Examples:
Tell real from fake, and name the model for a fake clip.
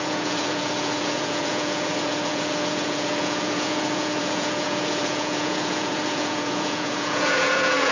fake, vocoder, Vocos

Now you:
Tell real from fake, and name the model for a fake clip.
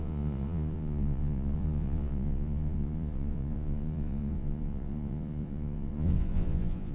fake, vocoder, Vocos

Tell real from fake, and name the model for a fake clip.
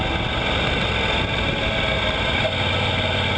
real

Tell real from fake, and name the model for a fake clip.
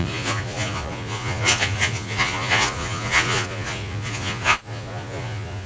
fake, vocoder, Vocos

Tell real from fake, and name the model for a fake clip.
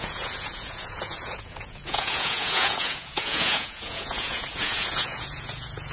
fake, vocoder, Vocos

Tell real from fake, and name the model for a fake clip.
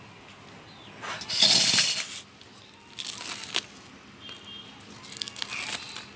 real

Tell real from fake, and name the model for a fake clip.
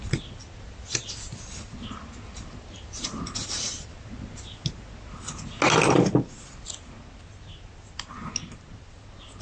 real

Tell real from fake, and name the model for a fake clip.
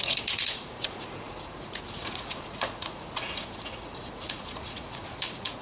fake, vocoder, Vocos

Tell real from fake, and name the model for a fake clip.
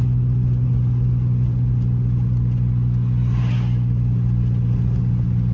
real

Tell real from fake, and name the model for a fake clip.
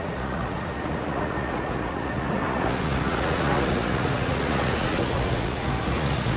fake, vocoder, Vocos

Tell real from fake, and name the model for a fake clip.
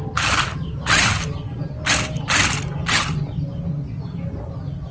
real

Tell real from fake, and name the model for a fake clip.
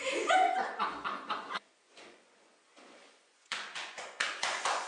fake, vocoder, Vocos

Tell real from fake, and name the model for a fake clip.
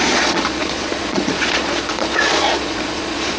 fake, vocoder, Vocos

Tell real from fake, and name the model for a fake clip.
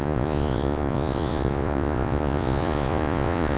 fake, vocoder, Vocos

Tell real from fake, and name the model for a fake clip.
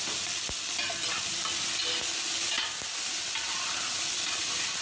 real